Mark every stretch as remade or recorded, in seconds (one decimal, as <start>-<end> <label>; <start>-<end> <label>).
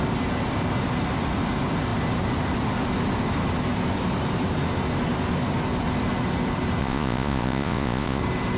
0.0-6.8 recorded; 6.8-8.2 remade; 8.2-8.6 recorded